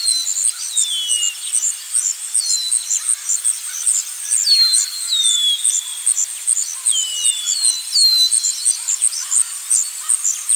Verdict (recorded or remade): recorded